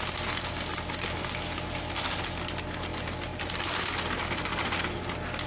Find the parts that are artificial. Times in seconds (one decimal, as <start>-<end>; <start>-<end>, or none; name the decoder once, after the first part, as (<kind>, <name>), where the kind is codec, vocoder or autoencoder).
none

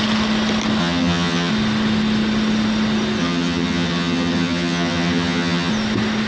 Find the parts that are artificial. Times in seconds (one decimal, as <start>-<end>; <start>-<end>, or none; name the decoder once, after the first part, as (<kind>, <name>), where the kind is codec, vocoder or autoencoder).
0.8-1.5 (vocoder, HiFi-GAN); 3.2-5.7

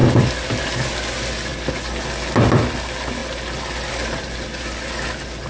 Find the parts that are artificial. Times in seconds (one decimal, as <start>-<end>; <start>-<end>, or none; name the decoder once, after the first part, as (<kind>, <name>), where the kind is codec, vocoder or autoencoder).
none

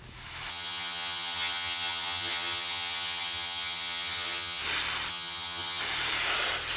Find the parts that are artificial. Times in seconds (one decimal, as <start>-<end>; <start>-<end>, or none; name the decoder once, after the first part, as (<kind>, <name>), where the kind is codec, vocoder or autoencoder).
0.5-4.6 (vocoder, HiFi-GAN); 5.1-5.8

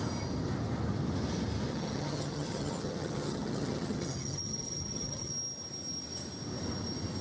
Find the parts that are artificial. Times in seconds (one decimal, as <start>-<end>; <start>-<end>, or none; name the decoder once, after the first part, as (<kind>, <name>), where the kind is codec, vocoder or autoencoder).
1.7-5.3 (vocoder, HiFi-GAN)

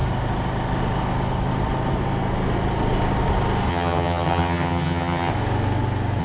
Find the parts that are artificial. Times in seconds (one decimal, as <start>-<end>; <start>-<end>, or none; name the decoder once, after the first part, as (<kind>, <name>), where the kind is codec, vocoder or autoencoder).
3.7-5.3 (vocoder, HiFi-GAN)

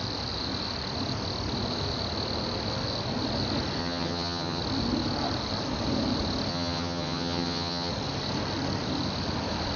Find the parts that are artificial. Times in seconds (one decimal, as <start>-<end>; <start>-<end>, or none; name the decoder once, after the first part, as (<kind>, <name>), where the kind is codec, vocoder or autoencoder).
3.8-4.6 (vocoder, HiFi-GAN); 6.5-7.9